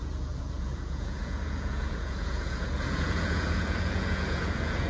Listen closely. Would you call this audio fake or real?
fake